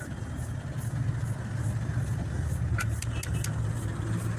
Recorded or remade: recorded